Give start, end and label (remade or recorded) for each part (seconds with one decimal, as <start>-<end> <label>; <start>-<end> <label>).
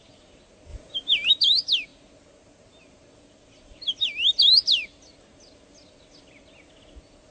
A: 0.0-7.3 recorded